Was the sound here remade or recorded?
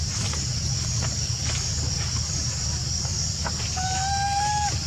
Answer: recorded